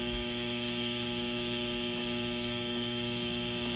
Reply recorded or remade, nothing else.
remade